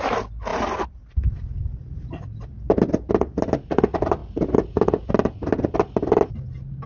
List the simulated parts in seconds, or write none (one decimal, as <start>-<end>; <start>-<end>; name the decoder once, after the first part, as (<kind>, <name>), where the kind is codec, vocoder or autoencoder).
none